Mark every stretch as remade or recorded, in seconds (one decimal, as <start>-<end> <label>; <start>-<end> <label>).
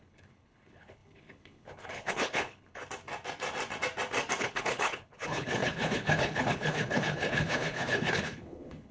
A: 0.0-2.8 remade; 2.8-4.4 recorded; 4.4-8.9 remade